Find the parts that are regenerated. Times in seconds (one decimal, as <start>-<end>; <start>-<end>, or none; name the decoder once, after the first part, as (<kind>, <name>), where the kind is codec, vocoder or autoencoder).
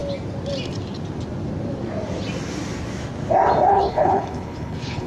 3.7-5.1 (codec, HILCodec)